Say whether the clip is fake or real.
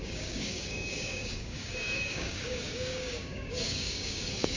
fake